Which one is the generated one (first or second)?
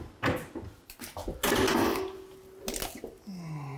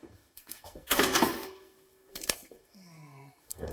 second